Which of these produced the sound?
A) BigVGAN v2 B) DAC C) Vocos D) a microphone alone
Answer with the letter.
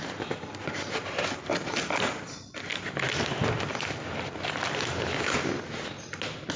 D